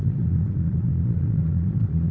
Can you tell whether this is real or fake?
fake